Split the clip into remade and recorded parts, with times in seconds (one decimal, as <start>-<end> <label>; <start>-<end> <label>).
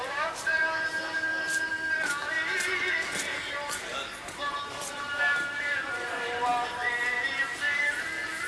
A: 0.0-1.3 remade; 1.3-4.9 recorded; 4.9-6.5 remade; 6.5-7.2 recorded; 7.2-8.5 remade